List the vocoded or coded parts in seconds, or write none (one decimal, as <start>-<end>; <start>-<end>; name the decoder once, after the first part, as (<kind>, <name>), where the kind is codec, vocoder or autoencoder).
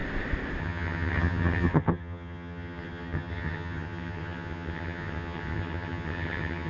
0.6-6.7 (vocoder, HiFi-GAN)